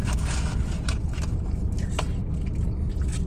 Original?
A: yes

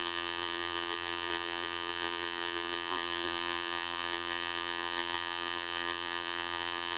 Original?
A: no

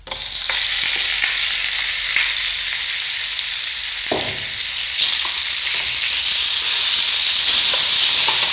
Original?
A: yes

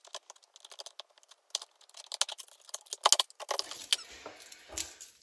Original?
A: yes